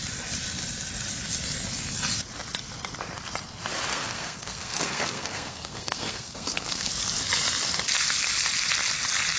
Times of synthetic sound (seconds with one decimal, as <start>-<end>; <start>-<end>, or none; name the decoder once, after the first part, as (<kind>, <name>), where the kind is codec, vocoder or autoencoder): 3.9-6.9 (codec, SNAC)